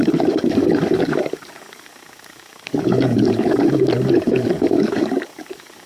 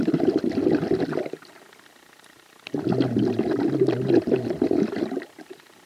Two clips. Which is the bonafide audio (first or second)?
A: second